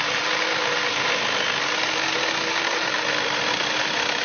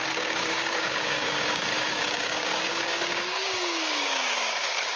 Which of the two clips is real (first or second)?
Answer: first